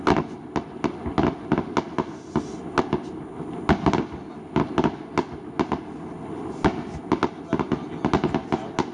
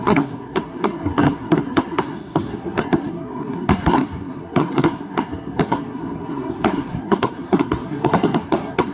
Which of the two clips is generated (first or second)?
second